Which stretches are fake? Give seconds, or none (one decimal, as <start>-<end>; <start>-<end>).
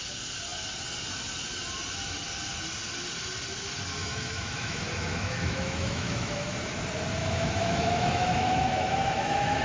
4.0-6.7; 7.2-9.6